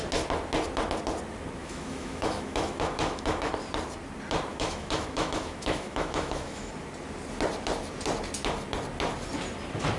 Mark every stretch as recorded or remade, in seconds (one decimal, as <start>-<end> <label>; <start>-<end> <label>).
0.0-1.6 recorded; 1.6-3.5 remade; 3.5-4.5 recorded; 4.5-6.7 remade; 6.7-10.0 recorded